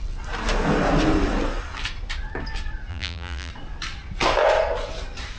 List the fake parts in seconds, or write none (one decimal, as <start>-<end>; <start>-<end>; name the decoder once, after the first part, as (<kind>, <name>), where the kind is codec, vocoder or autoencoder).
2.9-3.5 (vocoder, BigVGAN v2)